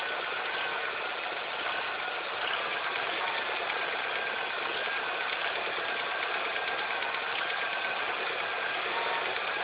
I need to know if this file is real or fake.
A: real